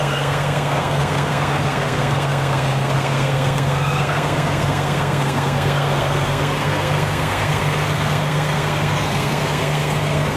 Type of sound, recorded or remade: remade